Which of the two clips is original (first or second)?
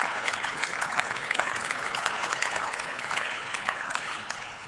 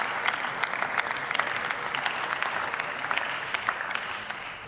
second